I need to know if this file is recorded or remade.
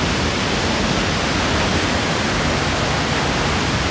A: recorded